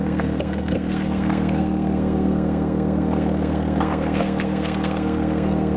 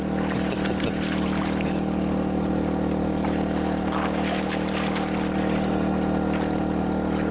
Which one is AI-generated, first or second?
first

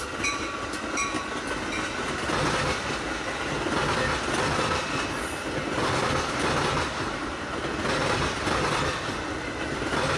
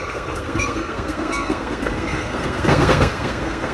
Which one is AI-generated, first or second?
second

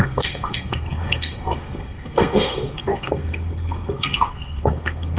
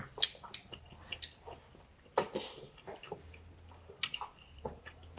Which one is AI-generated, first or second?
first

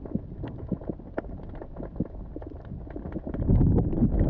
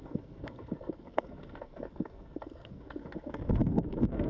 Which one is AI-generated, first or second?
second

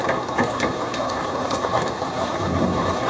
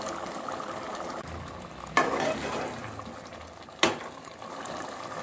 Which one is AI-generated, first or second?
first